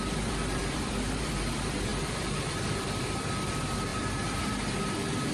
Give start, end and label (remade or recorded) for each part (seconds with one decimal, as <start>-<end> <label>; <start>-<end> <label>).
0.0-5.3 remade